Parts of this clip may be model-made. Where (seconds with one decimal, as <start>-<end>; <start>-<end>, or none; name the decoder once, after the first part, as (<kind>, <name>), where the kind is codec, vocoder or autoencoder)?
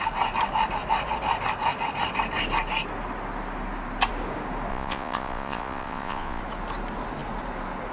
4.7-6.4 (vocoder, Vocos)